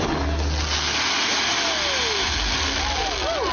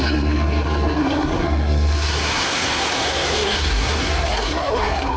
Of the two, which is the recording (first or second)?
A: first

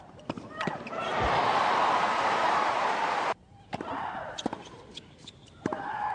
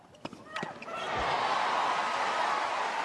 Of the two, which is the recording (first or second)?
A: second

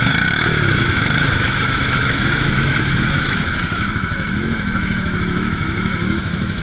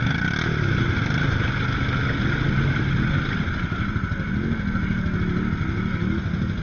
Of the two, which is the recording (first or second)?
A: second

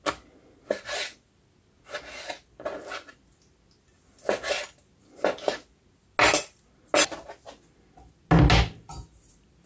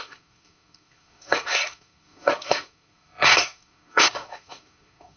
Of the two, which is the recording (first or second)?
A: first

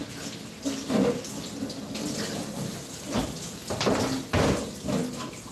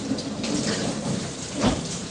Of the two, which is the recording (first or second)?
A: first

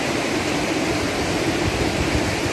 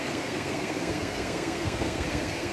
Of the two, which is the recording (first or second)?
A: first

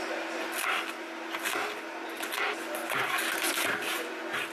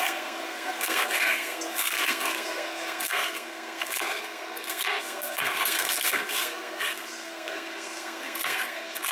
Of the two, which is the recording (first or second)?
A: first